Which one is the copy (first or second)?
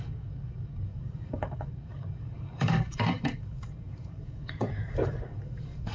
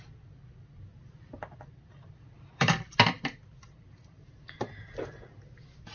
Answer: first